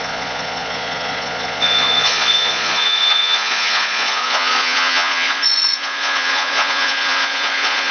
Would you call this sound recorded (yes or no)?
no